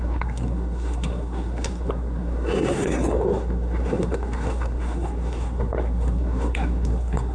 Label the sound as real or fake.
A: fake